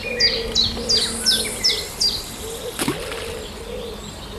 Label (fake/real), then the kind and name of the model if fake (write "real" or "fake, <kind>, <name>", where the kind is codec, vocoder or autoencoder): real